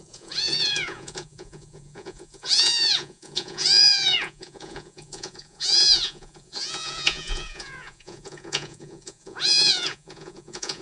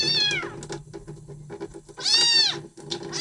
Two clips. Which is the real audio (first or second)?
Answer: second